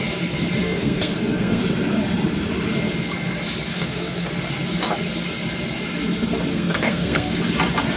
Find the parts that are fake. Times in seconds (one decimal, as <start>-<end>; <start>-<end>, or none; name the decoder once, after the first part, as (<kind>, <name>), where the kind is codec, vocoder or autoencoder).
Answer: 0.6-1.6 (codec, SNAC); 3.7-4.3; 6.5-7.4